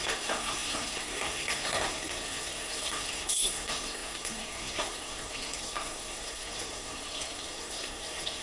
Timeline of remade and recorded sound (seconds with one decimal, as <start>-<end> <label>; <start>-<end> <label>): 0.0-8.4 remade